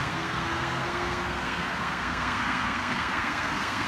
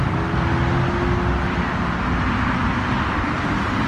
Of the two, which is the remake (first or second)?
first